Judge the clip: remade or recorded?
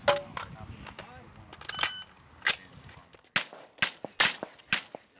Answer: recorded